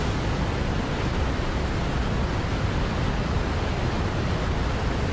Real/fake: real